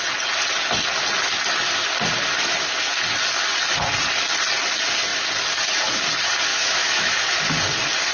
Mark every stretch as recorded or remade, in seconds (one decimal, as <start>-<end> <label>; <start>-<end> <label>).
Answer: 0.0-6.5 recorded; 6.5-7.4 remade; 7.4-8.1 recorded